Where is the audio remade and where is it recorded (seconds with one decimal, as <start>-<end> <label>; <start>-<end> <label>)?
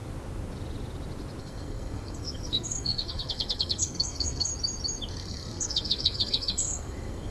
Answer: 0.0-1.4 recorded; 1.4-4.5 remade; 4.5-5.1 recorded; 5.1-7.3 remade